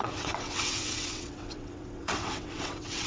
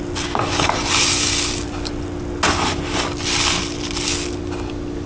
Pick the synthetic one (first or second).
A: first